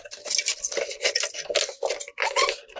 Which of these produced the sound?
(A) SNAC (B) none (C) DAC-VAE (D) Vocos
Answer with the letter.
B